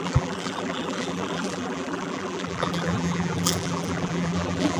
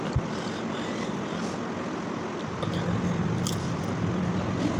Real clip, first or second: second